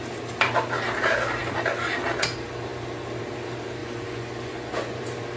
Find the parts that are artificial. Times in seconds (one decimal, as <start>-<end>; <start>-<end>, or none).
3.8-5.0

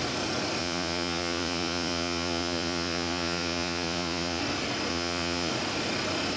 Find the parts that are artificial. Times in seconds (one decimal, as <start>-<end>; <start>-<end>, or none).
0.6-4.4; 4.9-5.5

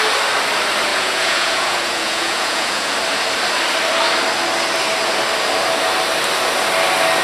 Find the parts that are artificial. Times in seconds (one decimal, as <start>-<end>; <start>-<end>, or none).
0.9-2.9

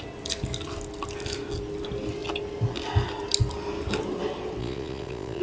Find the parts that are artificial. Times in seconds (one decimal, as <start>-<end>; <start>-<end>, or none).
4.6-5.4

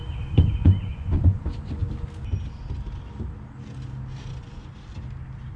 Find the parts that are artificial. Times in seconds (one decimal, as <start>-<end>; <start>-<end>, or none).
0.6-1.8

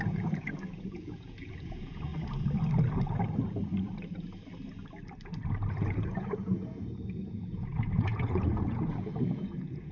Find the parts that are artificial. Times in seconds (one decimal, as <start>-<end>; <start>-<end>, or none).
0.0-2.1; 5.7-9.9

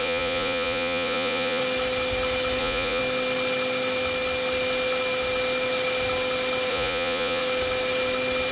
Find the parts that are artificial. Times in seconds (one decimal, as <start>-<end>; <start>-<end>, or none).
0.0-1.6; 2.6-3.0; 6.7-7.4

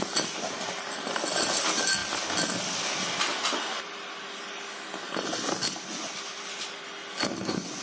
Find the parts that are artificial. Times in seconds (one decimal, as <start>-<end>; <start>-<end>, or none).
none